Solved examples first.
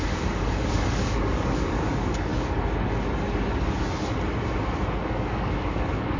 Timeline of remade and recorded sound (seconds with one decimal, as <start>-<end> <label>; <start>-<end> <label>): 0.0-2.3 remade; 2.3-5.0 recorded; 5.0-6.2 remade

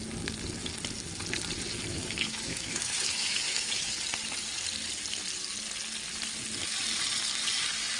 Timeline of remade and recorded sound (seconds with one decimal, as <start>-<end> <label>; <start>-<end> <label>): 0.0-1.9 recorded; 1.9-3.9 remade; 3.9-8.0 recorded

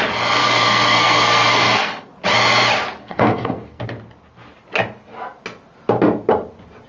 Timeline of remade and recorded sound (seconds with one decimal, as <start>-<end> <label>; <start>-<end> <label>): 0.0-0.4 recorded; 0.4-2.1 remade; 2.1-3.0 recorded; 3.0-3.8 remade; 3.8-6.9 recorded

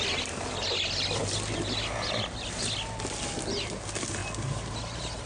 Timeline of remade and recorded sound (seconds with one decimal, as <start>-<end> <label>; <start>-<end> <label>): 0.0-5.3 recorded

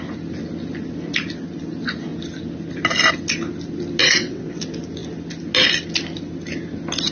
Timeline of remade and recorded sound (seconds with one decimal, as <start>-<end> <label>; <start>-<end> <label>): 0.0-4.0 recorded; 4.0-4.6 remade; 4.6-7.1 recorded

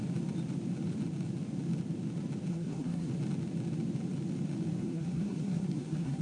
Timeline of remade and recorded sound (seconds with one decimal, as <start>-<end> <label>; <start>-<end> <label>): 0.0-2.5 recorded; 2.5-3.1 remade; 3.1-4.8 recorded; 4.8-6.2 remade

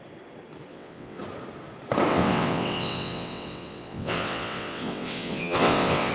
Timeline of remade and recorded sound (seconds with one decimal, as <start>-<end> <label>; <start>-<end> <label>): 0.0-0.7 recorded; 0.7-1.2 remade; 1.2-2.1 recorded; 2.1-6.1 remade

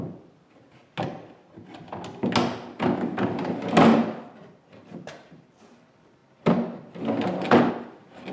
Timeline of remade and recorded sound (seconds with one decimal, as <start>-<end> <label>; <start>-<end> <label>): 0.0-3.9 recorded; 3.9-5.6 remade; 5.6-8.3 recorded